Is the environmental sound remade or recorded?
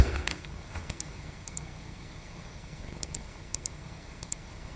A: remade